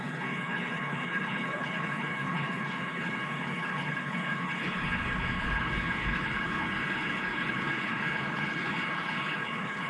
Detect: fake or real fake